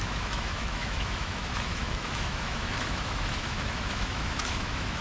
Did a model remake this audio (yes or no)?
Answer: yes